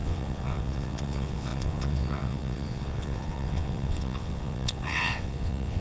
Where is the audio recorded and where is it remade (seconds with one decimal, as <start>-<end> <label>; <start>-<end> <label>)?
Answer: 0.0-5.8 remade